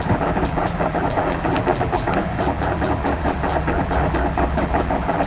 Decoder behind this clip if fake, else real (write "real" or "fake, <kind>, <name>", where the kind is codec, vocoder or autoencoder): fake, vocoder, BigVGAN v2